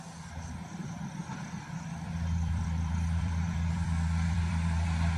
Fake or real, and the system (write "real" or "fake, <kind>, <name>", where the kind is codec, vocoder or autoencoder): fake, vocoder, BigVGAN v2